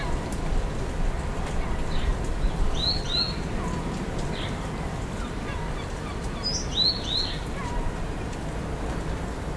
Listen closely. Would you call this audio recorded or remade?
recorded